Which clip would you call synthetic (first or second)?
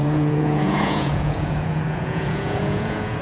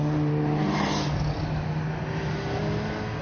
first